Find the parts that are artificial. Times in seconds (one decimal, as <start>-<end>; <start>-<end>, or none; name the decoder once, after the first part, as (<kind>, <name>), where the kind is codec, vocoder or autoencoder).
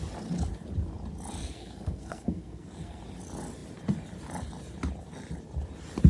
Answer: 1.4-3.0 (codec, SNAC)